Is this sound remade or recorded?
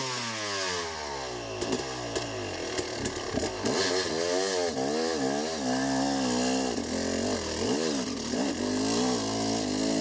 recorded